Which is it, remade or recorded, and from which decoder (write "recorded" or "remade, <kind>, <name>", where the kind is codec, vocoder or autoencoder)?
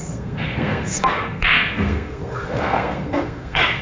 remade, codec, SNAC